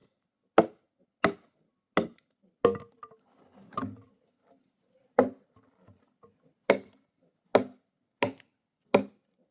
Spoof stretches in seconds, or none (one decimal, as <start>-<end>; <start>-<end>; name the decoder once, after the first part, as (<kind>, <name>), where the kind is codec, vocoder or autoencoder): none